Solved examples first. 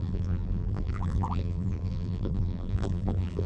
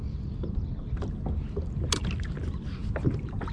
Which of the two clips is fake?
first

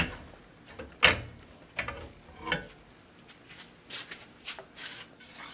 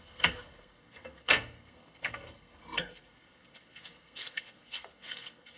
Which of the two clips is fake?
second